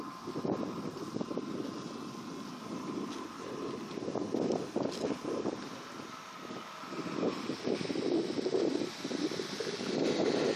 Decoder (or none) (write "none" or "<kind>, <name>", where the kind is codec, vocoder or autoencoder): none